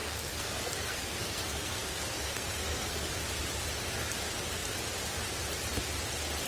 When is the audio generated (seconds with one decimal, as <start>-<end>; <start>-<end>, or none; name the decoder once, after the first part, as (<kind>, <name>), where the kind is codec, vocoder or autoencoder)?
0.0-3.1 (codec, SNAC)